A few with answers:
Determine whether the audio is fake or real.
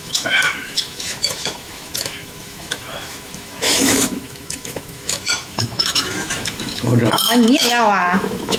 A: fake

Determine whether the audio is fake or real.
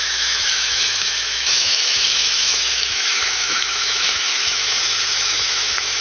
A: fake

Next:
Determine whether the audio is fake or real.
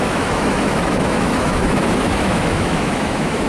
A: fake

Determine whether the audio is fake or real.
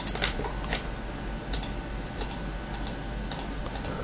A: real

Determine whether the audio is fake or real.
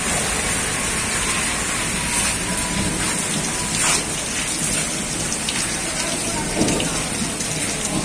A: real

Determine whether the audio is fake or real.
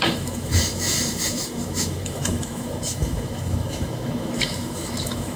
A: fake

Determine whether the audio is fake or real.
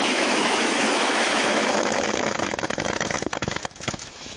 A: fake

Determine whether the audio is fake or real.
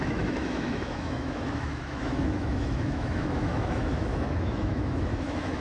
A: fake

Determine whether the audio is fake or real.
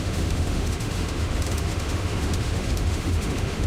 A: fake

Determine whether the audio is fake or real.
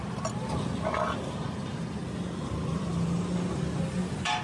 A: real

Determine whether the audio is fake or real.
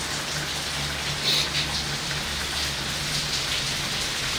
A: real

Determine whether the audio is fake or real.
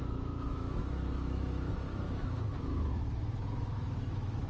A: fake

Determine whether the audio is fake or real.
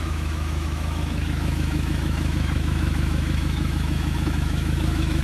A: fake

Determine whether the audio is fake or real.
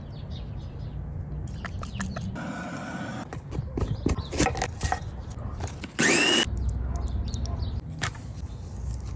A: real